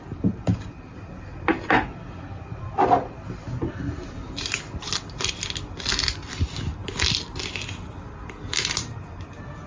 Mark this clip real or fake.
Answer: real